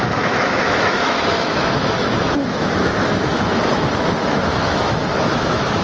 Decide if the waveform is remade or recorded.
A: remade